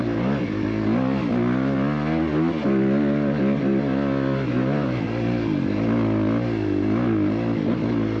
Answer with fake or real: real